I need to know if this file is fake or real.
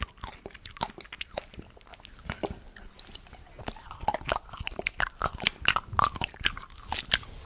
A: real